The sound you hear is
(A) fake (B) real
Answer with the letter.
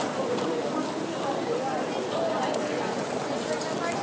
B